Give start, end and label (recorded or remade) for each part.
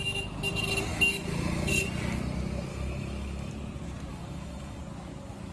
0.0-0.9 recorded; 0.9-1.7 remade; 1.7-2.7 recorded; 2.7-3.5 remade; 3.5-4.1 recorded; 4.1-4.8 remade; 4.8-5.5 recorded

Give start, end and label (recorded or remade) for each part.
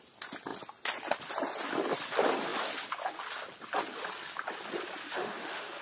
0.0-5.0 recorded; 5.0-5.8 remade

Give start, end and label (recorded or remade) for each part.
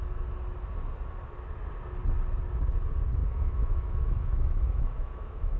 0.0-3.2 recorded; 3.2-5.6 remade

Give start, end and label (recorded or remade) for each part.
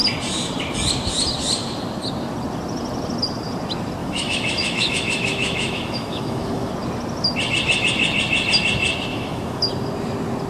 0.0-4.0 recorded; 4.0-6.7 remade; 6.7-9.1 recorded; 9.1-9.6 remade; 9.6-10.5 recorded